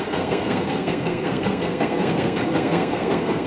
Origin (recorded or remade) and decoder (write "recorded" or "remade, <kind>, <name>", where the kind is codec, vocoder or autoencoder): remade, codec, SNAC